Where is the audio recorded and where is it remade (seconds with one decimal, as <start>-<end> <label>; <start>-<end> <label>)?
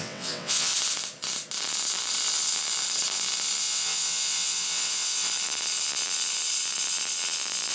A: 0.0-0.7 remade; 0.7-3.6 recorded; 3.6-5.3 remade; 5.3-7.7 recorded